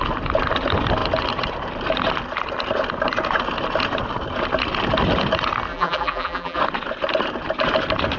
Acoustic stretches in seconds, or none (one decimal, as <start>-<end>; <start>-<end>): 0.0-5.7; 6.6-8.2